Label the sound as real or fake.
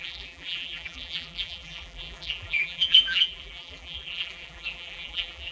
fake